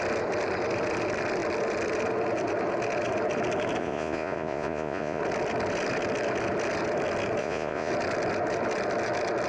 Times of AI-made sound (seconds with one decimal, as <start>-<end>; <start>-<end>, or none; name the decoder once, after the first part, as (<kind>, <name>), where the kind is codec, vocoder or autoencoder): 3.8-5.2 (vocoder, Vocos); 7.4-7.9